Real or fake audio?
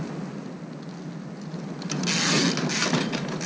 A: real